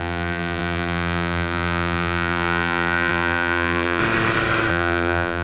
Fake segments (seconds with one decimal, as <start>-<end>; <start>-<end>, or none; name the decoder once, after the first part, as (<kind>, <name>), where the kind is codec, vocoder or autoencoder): 0.0-4.0 (vocoder, BigVGAN v2); 4.7-5.4